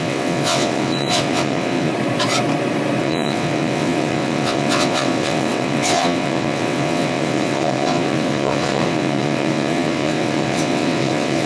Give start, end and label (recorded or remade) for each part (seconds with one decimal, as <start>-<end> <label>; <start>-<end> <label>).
0.0-1.9 remade; 1.9-3.0 recorded; 3.0-11.5 remade